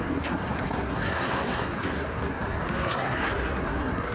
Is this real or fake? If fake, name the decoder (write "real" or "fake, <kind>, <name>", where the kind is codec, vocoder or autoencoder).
fake, codec, SNAC